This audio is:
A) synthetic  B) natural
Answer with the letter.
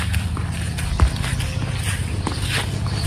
B